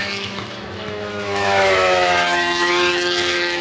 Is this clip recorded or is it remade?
remade